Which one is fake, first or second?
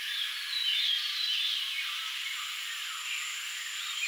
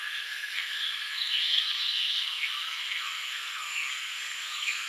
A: second